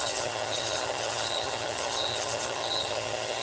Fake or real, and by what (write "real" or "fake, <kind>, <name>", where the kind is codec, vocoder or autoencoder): fake, vocoder, HiFi-GAN